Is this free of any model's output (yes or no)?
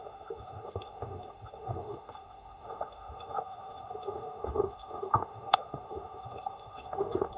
no